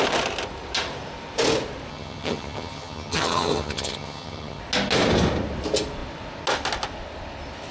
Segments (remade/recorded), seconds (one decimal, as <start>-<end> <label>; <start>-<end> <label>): 0.0-1.9 recorded; 1.9-4.6 remade; 4.6-7.7 recorded